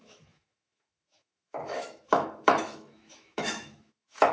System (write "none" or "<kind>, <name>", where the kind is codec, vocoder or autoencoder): autoencoder, DAC-VAE